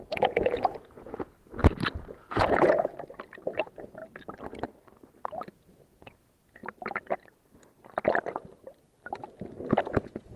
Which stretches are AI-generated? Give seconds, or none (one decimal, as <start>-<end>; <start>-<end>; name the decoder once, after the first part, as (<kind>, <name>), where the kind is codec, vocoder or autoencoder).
0.0-1.6 (vocoder, Vocos); 2.1-2.9; 3.6-4.0; 5.5-6.6; 9.8-10.4